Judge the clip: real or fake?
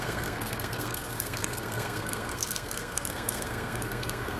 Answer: fake